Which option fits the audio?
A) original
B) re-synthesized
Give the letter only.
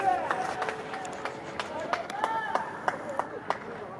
A